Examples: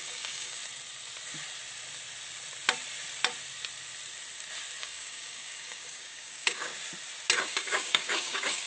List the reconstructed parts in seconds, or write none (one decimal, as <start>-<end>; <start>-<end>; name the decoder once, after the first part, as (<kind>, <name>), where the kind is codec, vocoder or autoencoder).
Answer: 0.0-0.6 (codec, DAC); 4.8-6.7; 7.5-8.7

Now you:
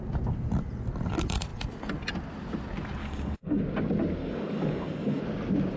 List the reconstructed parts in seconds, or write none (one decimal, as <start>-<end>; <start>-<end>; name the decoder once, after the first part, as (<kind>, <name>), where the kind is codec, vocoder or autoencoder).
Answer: 3.0-3.6 (codec, DAC); 4.2-5.2

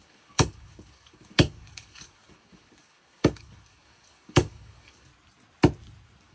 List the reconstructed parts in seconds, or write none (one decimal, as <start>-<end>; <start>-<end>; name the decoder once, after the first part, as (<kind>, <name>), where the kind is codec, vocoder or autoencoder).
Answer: 0.0-5.1 (codec, DAC)

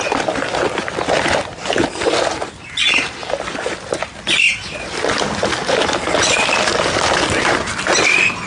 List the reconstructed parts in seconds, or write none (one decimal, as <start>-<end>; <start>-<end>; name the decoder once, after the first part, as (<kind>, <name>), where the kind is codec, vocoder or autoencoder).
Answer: none

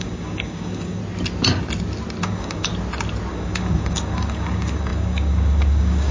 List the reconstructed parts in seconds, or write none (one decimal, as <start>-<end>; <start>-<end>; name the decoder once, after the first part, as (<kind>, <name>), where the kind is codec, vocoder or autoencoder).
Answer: 0.0-1.0 (codec, DAC); 2.2-2.7; 3.3-6.1